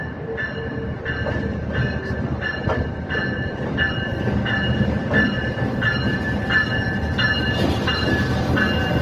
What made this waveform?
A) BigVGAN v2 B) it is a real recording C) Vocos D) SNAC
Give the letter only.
B